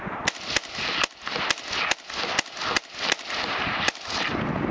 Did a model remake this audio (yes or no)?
no